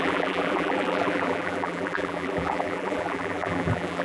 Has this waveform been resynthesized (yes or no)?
yes